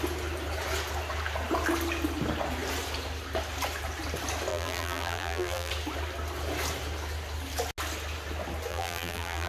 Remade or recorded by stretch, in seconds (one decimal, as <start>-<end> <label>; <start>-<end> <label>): 0.0-4.5 recorded; 4.5-5.7 remade; 5.7-8.7 recorded; 8.7-9.5 remade